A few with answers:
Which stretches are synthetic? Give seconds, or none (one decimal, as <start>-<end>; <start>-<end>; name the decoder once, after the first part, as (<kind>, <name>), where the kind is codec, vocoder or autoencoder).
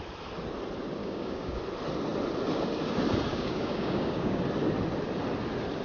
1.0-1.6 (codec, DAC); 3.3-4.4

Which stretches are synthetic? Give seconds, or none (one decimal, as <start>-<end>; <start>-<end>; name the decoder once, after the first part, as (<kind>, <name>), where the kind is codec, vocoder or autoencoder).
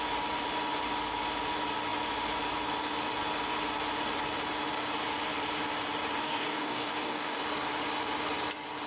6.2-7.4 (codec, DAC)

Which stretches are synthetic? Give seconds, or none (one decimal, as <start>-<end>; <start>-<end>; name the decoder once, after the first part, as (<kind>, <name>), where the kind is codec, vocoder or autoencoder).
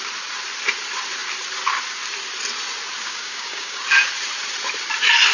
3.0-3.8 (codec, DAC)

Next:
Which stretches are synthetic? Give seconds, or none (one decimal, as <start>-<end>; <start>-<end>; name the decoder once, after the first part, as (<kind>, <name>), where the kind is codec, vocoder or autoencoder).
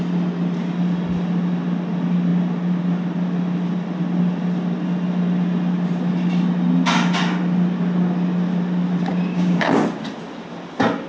9.1-9.8 (codec, DAC)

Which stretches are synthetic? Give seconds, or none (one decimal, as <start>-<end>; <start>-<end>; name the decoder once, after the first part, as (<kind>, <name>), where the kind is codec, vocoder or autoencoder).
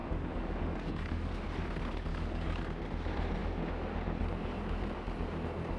0.0-1.3 (codec, DAC); 2.1-2.6